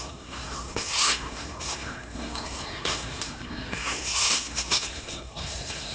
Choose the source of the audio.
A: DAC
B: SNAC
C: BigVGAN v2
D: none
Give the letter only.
B